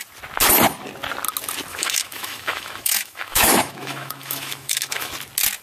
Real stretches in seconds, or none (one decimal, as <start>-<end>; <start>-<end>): 0.0-1.7; 5.1-5.6